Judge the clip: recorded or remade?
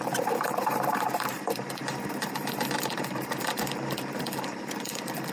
remade